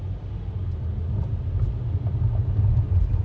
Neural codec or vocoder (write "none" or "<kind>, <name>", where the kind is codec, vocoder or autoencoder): none